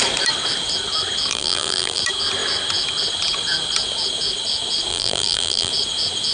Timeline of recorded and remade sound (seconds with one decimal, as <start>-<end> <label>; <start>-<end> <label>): 0.0-1.3 recorded; 1.3-2.0 remade; 2.0-4.9 recorded; 4.9-5.7 remade; 5.7-6.3 recorded